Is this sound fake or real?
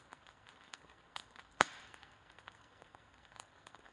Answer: fake